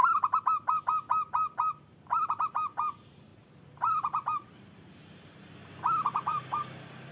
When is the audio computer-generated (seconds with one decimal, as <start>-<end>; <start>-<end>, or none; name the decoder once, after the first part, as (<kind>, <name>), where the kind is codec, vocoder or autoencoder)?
0.0-0.8 (vocoder, BigVGAN v2); 3.3-4.5; 6.3-7.1